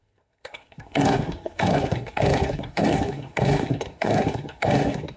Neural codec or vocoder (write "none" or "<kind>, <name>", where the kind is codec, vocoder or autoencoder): codec, SNAC